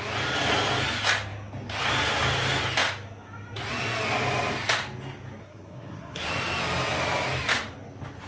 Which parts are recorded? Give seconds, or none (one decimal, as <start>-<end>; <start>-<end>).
0.0-5.4; 6.3-8.3